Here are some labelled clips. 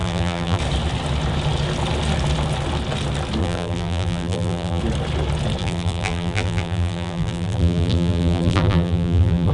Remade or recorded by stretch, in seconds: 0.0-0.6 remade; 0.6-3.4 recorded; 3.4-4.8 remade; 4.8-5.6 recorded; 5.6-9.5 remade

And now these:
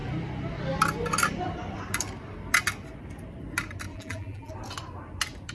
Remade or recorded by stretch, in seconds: 0.0-3.9 recorded; 3.9-4.5 remade; 4.5-5.5 recorded

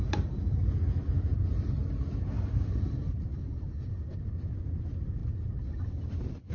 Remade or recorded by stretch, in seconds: 0.0-1.3 recorded; 1.3-4.5 remade; 4.5-5.2 recorded; 5.2-6.5 remade